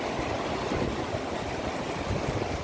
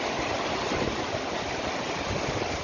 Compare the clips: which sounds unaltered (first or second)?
first